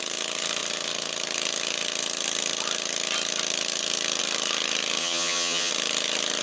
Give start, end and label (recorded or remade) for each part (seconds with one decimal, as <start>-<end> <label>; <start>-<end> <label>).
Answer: 0.0-5.0 recorded; 5.0-5.7 remade; 5.7-6.4 recorded

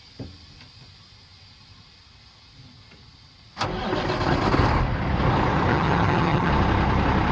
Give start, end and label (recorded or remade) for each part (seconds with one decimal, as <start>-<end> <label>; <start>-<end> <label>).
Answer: 0.0-5.7 recorded; 5.7-6.5 remade; 6.5-7.3 recorded

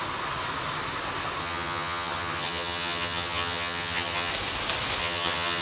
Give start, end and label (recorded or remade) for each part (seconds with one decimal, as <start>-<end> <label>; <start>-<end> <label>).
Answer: 0.0-1.4 recorded; 1.4-4.3 remade; 4.3-5.0 recorded; 5.0-5.6 remade

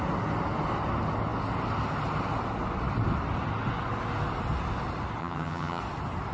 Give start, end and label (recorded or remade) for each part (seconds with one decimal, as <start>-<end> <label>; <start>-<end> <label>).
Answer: 0.0-5.2 recorded; 5.2-5.8 remade; 5.8-6.3 recorded

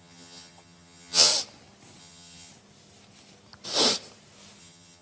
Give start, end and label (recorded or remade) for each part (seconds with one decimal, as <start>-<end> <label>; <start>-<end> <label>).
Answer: 0.0-1.3 remade; 1.3-2.0 recorded; 2.0-2.5 remade; 2.5-4.6 recorded; 4.6-5.0 remade

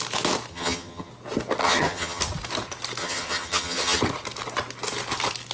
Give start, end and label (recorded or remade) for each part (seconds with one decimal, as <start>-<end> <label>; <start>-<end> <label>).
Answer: 0.0-0.5 recorded; 0.5-1.1 remade; 1.1-1.6 recorded; 1.6-2.2 remade; 2.2-3.0 recorded; 3.0-4.0 remade; 4.0-5.5 recorded

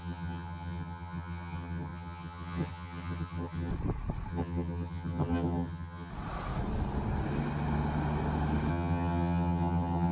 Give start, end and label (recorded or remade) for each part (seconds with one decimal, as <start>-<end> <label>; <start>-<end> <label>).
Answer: 0.0-3.7 remade; 3.7-4.3 recorded; 4.3-6.1 remade; 6.1-8.7 recorded; 8.7-10.1 remade